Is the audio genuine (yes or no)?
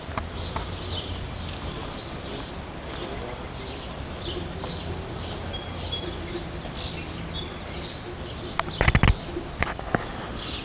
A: yes